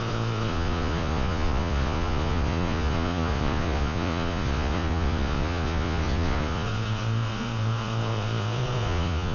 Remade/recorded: remade